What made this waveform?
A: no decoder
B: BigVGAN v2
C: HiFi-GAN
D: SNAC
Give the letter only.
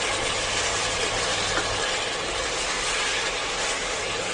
A